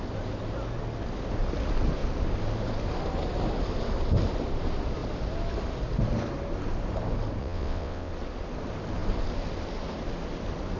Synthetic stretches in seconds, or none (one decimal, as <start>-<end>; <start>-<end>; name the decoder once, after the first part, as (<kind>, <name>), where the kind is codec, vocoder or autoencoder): 7.4-8.1 (vocoder, WaveNeXt)